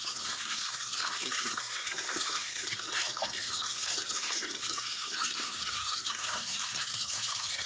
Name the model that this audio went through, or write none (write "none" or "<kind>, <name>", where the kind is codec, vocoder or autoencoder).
codec, SNAC